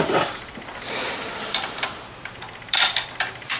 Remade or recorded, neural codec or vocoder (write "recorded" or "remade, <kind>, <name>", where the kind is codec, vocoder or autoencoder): remade, vocoder, BigVGAN v2